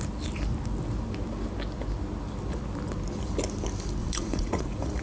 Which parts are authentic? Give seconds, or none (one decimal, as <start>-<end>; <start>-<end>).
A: 0.0-4.0